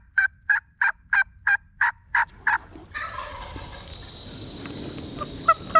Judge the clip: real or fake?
real